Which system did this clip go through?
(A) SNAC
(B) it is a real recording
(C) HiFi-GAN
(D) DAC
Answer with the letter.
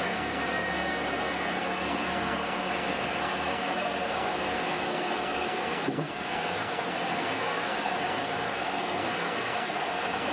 A